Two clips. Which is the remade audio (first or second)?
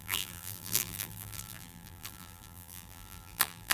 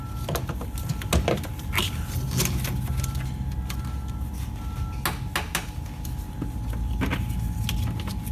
first